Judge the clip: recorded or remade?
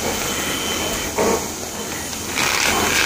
recorded